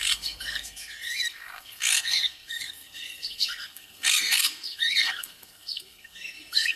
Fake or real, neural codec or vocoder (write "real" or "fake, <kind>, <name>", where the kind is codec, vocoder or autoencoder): fake, codec, SNAC